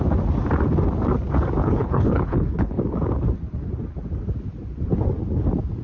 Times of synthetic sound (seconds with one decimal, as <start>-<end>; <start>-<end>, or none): 1.6-2.8